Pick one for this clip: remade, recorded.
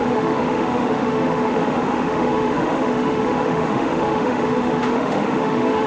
remade